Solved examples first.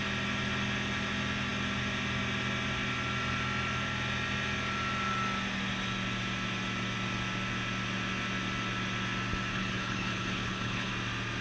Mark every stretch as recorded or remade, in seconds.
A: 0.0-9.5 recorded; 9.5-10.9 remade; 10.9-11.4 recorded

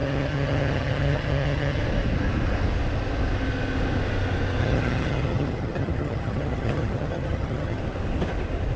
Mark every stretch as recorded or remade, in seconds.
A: 0.0-1.8 remade; 1.8-4.6 recorded; 4.6-7.8 remade; 7.8-8.8 recorded